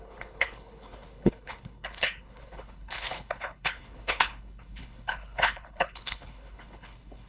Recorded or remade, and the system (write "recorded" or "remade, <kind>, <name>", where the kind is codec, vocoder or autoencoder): remade, codec, HILCodec